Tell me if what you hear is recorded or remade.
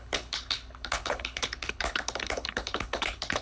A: remade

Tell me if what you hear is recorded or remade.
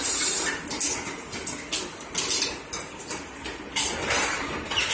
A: recorded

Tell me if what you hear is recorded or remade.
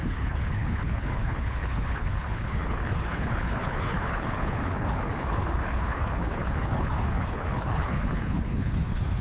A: remade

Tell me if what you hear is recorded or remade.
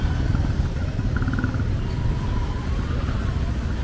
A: recorded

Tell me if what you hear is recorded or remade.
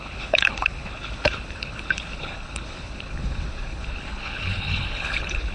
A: remade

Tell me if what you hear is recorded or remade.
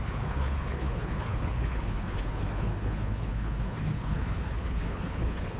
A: remade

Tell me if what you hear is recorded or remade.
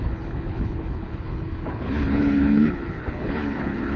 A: remade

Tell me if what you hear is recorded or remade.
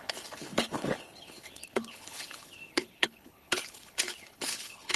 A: remade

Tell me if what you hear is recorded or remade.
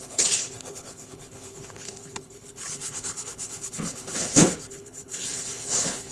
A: remade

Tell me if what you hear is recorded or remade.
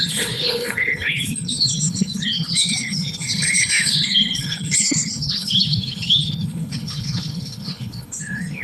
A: remade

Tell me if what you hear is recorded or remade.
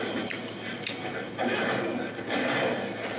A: recorded